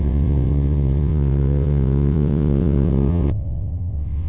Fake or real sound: fake